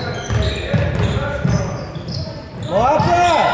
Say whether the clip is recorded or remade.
recorded